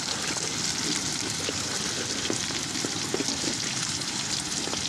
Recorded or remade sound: recorded